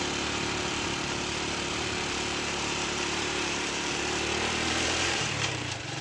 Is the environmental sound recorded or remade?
remade